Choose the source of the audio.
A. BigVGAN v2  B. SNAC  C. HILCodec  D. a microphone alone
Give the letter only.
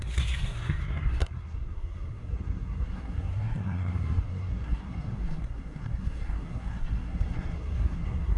B